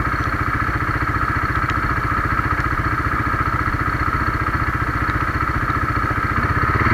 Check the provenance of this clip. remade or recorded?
recorded